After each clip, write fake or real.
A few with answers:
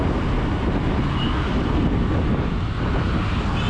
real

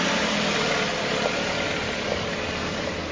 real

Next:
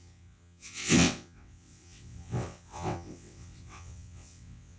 fake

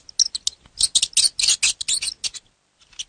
real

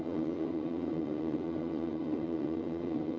fake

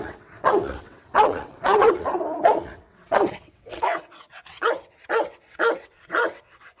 fake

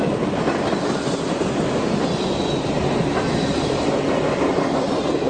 real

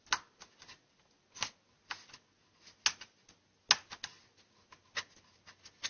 real